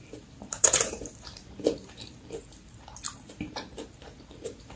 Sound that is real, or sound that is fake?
fake